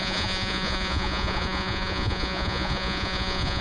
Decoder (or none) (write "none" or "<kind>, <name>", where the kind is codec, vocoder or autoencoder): vocoder, Vocos